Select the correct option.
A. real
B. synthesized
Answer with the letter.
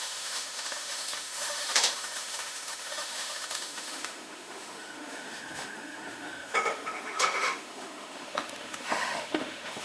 B